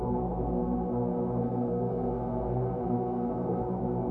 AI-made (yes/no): yes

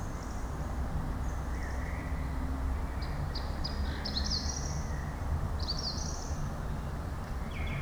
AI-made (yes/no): no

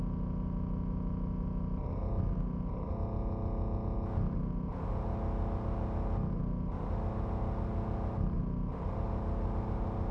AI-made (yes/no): no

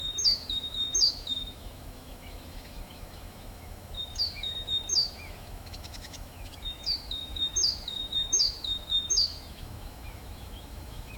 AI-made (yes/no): yes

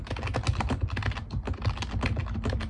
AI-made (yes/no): no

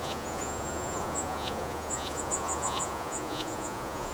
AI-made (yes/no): yes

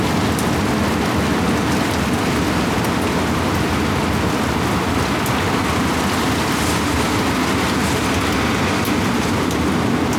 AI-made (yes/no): no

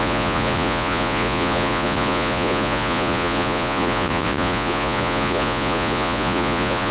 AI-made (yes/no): yes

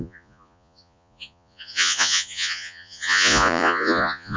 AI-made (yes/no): yes